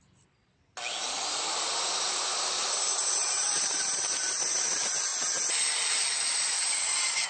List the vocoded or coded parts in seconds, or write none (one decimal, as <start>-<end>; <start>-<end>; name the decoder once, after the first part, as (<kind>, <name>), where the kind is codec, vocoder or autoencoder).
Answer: 3.0-5.1 (vocoder, BigVGAN v2); 6.3-7.3